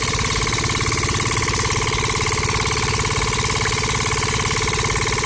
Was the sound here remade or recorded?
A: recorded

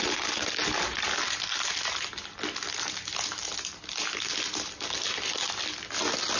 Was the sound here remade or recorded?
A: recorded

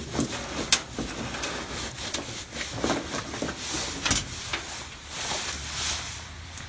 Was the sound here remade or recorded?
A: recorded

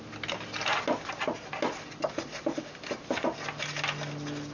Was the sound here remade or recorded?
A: recorded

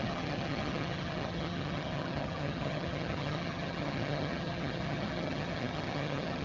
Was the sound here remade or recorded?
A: remade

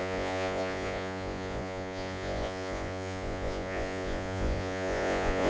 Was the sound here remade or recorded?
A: remade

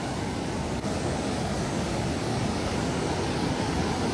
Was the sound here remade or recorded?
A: remade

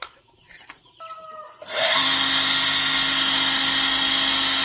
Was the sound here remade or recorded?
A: recorded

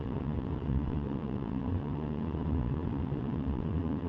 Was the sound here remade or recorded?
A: remade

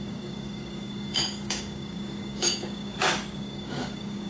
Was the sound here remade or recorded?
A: remade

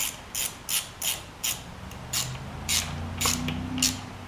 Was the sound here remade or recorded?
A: recorded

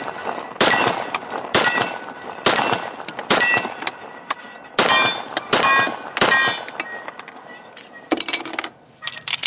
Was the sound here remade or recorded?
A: recorded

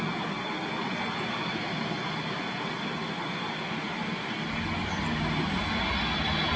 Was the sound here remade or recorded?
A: recorded